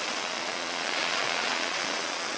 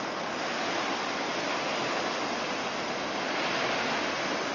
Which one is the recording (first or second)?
second